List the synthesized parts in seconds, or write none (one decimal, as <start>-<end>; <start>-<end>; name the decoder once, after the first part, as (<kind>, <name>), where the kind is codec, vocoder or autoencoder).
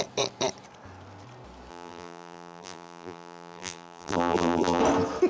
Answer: 1.7-4.8 (vocoder, BigVGAN v2)